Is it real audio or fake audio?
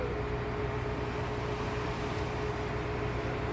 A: real